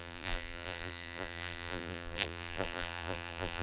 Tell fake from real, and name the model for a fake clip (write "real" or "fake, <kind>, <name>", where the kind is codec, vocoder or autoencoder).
fake, vocoder, BigVGAN v2